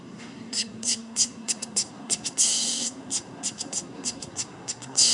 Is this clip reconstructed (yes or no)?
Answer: yes